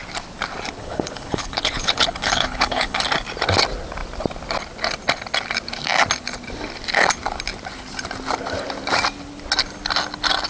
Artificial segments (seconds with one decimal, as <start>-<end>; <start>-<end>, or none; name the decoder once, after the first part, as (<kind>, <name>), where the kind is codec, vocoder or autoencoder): 0.8-3.0 (codec, HILCodec)